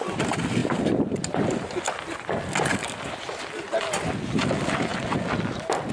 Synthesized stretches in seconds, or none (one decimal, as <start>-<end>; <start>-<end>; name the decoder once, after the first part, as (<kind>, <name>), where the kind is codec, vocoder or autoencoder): none